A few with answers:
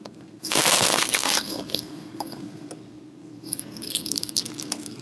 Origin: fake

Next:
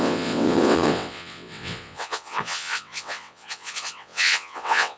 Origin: fake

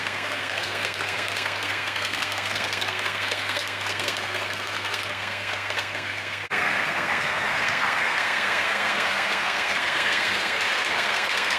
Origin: fake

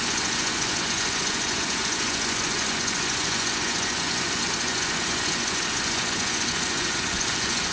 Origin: fake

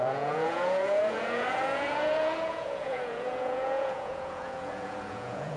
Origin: fake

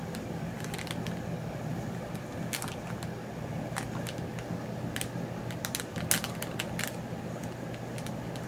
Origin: real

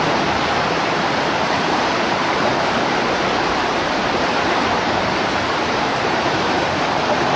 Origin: fake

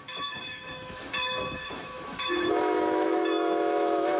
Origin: fake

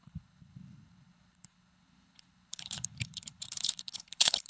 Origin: fake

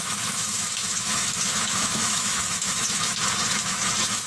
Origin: fake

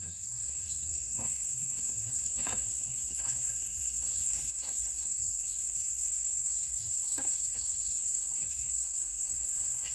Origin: fake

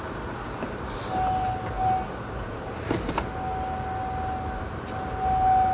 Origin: real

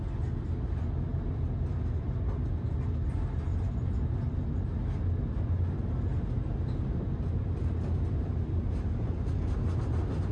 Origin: real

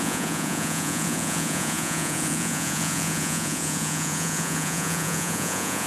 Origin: fake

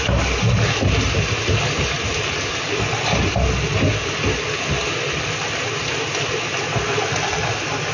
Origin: real